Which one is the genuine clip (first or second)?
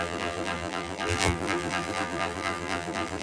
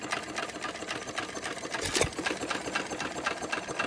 second